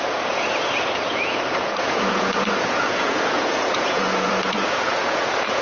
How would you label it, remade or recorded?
remade